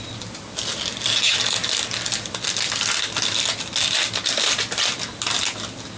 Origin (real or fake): real